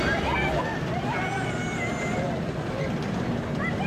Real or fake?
real